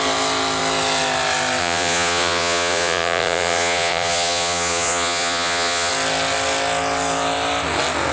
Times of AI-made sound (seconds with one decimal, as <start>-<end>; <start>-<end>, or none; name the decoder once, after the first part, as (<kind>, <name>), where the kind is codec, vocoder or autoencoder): 1.6-5.9 (vocoder, Vocos)